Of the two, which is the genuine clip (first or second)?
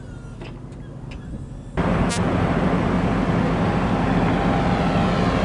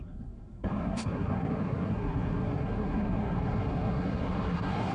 first